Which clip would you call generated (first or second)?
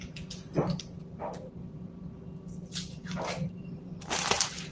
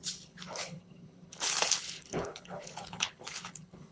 second